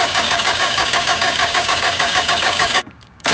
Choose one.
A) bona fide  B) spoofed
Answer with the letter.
B